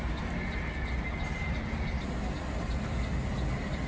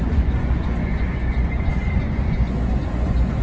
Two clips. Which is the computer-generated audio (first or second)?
second